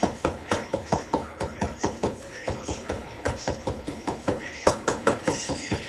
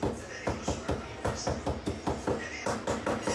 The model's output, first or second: first